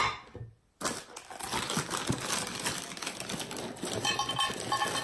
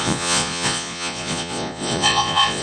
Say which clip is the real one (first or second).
first